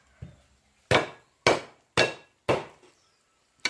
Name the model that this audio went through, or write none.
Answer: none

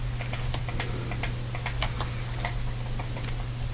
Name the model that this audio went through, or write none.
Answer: none